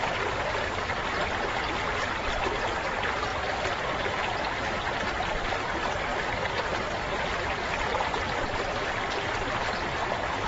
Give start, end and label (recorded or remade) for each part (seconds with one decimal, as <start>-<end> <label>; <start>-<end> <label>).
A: 0.0-10.5 recorded